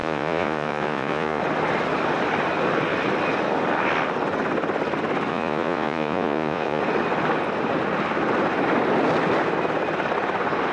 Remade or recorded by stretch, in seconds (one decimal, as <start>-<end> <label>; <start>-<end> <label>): 0.0-1.4 remade; 1.4-5.3 recorded; 5.3-6.8 remade; 6.8-10.7 recorded

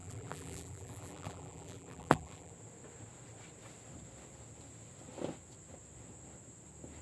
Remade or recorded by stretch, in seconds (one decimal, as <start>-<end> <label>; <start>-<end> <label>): 0.0-2.5 remade; 2.5-7.0 recorded

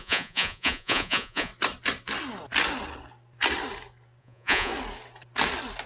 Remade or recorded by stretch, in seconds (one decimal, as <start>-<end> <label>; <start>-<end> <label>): 0.0-1.5 remade; 1.5-4.2 recorded; 4.2-4.7 remade; 4.7-5.9 recorded

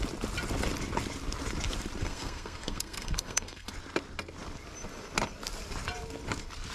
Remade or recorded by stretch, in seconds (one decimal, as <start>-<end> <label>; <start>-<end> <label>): 0.0-2.0 recorded; 2.0-3.7 remade; 3.7-6.7 recorded

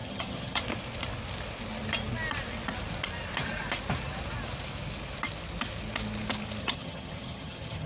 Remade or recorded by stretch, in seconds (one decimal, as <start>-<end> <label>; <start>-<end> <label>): 0.0-0.6 remade; 0.6-6.6 recorded; 6.6-7.9 remade

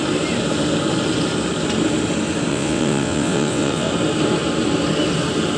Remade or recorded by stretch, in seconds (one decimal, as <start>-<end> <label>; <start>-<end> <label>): 0.0-2.5 recorded; 2.5-3.9 remade; 3.9-5.6 recorded

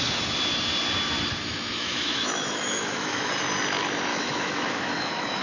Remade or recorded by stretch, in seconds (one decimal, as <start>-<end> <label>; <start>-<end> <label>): 0.0-1.4 recorded; 1.4-3.3 remade; 3.3-4.1 recorded; 4.1-5.4 remade